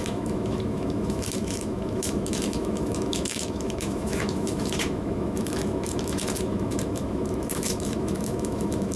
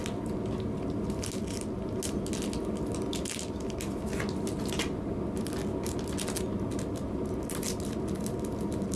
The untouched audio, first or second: second